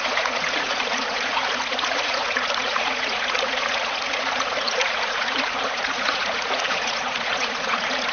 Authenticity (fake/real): fake